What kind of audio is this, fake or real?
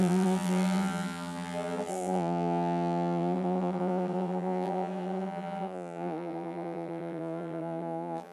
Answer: fake